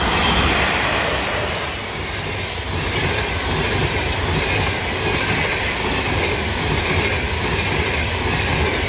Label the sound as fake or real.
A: real